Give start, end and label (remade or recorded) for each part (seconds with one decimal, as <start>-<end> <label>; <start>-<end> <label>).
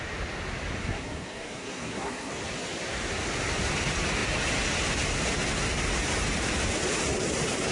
0.0-0.8 recorded; 0.8-2.3 remade; 2.3-7.7 recorded